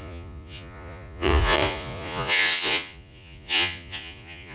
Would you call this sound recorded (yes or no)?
no